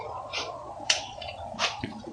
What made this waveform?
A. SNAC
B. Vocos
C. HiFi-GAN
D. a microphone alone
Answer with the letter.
B